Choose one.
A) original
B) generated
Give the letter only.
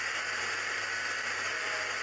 A